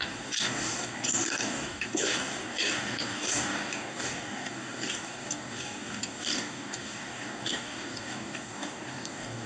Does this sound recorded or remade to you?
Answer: remade